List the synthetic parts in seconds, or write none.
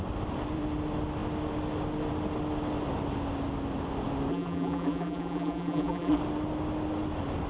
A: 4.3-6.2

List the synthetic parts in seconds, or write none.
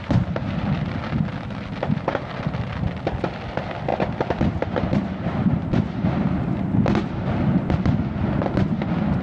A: none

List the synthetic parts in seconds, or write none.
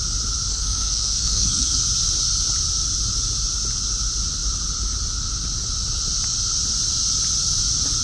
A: 0.5-1.8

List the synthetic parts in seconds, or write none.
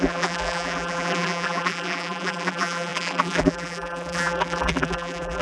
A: 0.0-5.4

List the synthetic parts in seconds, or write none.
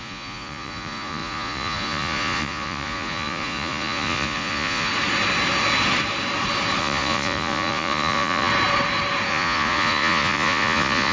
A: 0.0-4.9; 6.8-8.5; 9.3-11.1